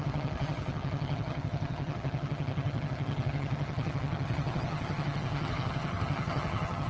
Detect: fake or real fake